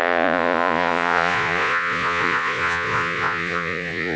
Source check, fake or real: fake